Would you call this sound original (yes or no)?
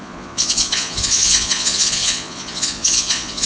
no